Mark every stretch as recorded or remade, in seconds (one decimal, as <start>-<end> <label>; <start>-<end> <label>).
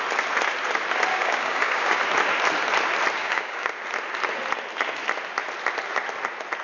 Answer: 0.0-1.1 recorded; 1.1-2.0 remade; 2.0-3.2 recorded; 3.2-3.8 remade; 3.8-6.6 recorded